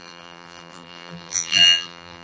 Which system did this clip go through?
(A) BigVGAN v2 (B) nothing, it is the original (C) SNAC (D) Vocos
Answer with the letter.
A